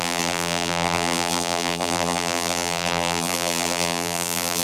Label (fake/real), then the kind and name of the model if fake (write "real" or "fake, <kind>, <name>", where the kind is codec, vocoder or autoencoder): fake, vocoder, BigVGAN v2